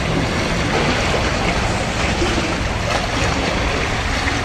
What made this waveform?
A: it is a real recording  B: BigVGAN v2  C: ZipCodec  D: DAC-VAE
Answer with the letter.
A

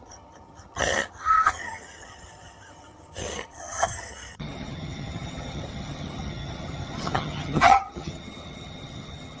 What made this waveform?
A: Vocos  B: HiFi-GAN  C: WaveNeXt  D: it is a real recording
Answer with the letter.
B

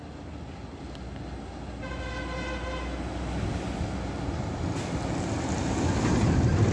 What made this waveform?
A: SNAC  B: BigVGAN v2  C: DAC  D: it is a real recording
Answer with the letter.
D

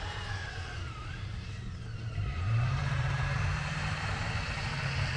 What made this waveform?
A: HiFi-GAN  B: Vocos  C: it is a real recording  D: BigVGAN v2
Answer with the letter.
D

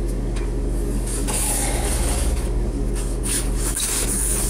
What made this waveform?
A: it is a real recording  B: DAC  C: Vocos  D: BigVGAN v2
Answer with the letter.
B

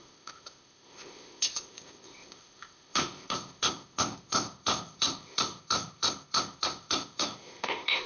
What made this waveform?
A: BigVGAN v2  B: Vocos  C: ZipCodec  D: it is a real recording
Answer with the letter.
C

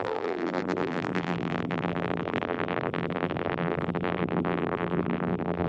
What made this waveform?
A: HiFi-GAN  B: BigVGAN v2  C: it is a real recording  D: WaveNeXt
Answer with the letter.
B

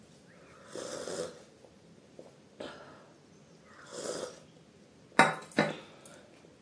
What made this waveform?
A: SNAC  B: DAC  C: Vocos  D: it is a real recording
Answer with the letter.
D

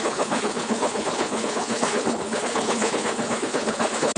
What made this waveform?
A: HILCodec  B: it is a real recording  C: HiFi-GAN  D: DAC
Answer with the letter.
A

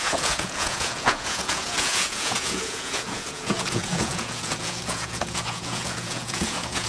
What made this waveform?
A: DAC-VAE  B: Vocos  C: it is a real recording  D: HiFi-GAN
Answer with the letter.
B